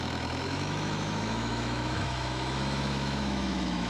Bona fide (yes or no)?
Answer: no